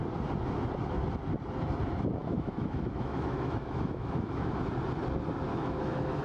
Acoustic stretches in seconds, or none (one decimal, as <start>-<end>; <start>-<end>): 0.0-2.2; 4.6-5.5